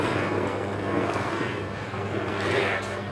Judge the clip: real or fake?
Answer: fake